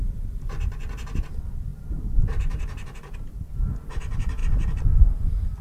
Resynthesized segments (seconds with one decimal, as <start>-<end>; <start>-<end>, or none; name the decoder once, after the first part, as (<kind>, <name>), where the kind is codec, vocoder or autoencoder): 1.7-3.5 (vocoder, BigVGAN v2)